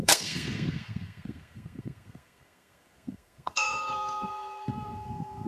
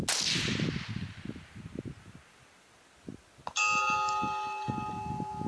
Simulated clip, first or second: first